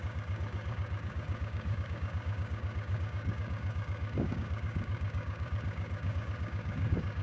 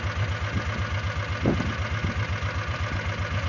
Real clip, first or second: second